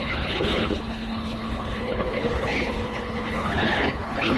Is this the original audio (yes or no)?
no